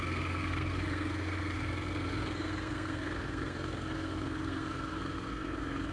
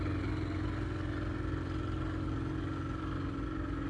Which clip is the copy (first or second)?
first